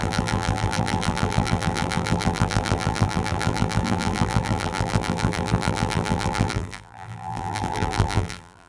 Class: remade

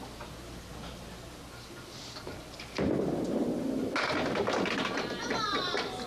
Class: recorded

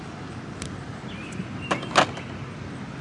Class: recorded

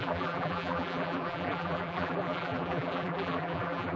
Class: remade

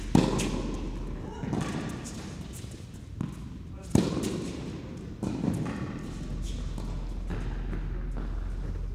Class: recorded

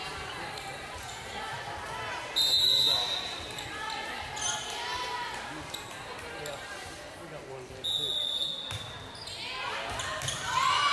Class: recorded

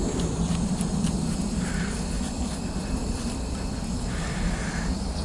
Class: recorded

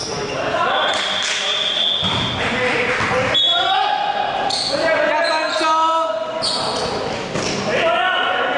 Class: recorded